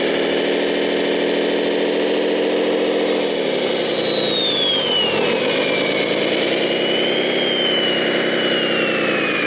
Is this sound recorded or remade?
recorded